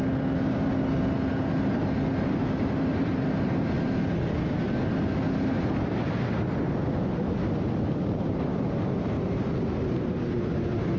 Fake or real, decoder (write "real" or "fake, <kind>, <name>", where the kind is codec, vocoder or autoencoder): real